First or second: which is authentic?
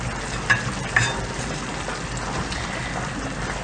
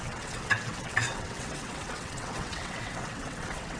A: first